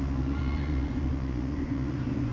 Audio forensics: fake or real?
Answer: fake